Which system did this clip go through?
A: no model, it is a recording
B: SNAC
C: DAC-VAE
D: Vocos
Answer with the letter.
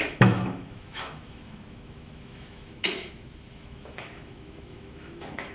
C